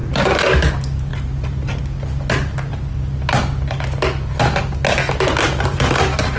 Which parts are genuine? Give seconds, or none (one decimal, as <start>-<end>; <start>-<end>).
0.0-6.4